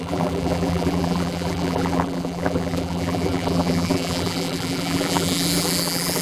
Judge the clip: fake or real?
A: fake